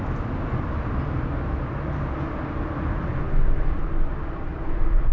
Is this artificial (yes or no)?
no